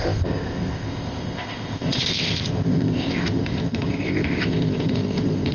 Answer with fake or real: fake